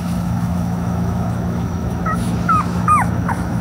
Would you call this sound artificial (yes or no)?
yes